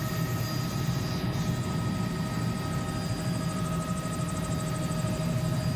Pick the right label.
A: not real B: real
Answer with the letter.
B